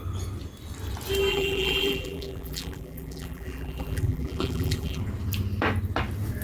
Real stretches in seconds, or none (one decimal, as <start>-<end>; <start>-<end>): 0.0-1.3; 5.0-6.4

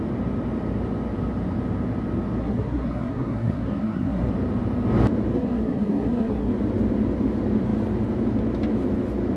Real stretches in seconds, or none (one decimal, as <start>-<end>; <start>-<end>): 0.0-2.4; 4.3-5.3; 6.5-9.4

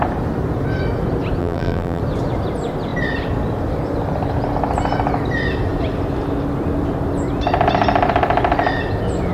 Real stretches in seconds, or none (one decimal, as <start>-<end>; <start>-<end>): 0.0-1.4; 2.0-9.3